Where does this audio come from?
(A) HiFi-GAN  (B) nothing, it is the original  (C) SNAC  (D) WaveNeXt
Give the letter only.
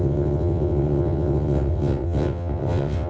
D